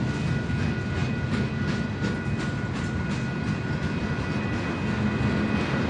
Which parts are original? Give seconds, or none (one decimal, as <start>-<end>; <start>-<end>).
0.0-5.9